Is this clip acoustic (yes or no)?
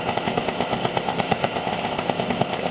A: no